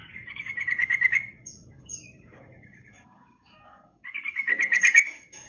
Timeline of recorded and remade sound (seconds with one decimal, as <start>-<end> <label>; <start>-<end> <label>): 0.0-5.5 remade